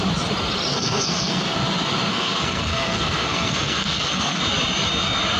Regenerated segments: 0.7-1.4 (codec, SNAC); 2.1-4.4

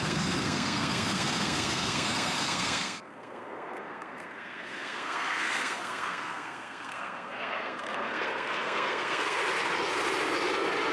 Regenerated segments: 0.0-9.4 (codec, SNAC)

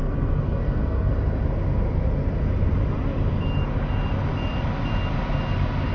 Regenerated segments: 0.0-1.1 (codec, SNAC)

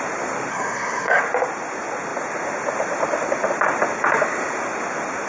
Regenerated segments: 0.5-1.2 (codec, SNAC)

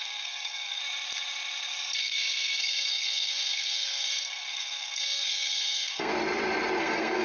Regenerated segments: 0.0-0.8 (codec, SNAC); 2.0-6.1; 6.8-7.2

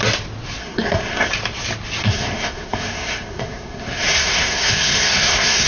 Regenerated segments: 0.6-1.3 (codec, SNAC); 2.0-5.7